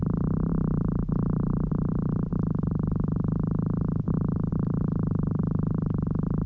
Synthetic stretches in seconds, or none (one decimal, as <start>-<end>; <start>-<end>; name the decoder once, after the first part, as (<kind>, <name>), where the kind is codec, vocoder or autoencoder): none